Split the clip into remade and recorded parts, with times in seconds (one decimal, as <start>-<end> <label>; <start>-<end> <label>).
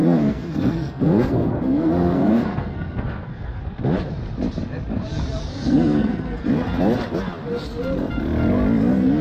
0.0-3.6 remade; 3.6-5.4 recorded; 5.4-6.5 remade; 6.5-9.2 recorded